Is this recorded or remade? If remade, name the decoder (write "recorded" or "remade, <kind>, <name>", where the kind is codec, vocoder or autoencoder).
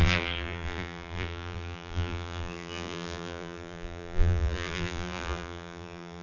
remade, vocoder, BigVGAN v2